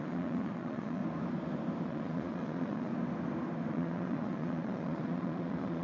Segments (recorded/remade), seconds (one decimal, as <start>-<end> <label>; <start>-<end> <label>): 0.0-1.0 remade; 1.0-1.8 recorded; 1.8-2.9 remade; 2.9-3.7 recorded; 3.7-5.8 remade